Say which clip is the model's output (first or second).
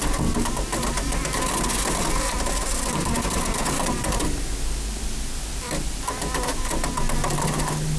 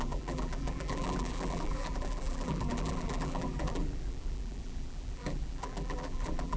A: second